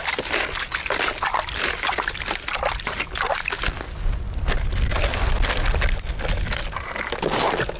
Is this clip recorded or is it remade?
recorded